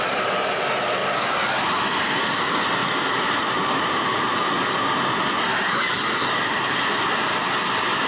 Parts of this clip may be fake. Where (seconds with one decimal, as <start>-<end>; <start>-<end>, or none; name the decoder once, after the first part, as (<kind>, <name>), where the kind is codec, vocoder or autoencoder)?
none